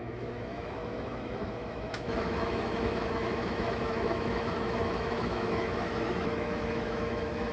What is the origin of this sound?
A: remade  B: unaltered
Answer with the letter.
A